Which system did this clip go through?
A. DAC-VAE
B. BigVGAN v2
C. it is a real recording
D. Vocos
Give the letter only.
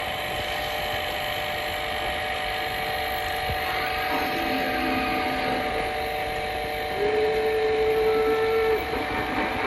C